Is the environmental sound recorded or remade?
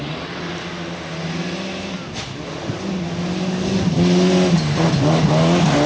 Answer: recorded